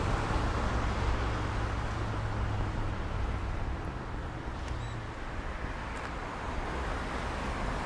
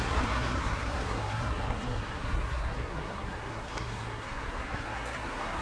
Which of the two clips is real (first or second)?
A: first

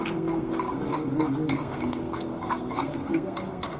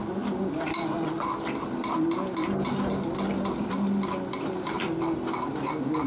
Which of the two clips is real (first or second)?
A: second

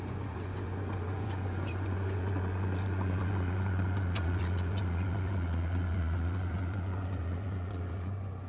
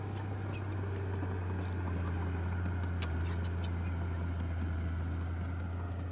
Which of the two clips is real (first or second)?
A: second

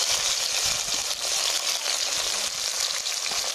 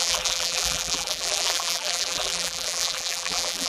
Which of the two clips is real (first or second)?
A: first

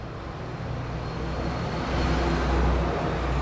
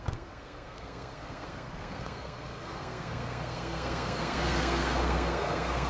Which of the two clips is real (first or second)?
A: first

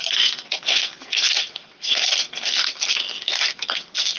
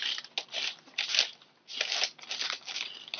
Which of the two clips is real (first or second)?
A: second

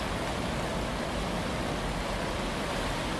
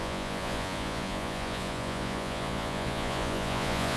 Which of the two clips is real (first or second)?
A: first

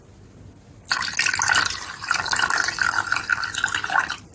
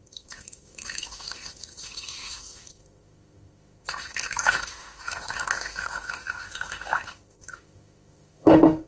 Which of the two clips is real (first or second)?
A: first